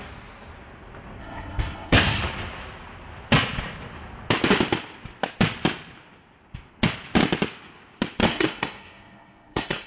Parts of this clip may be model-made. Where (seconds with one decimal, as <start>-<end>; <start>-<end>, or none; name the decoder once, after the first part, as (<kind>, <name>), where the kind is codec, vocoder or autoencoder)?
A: 1.2-2.2 (codec, SNAC); 8.3-9.9